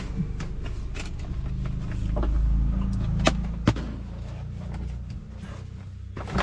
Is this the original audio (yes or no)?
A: yes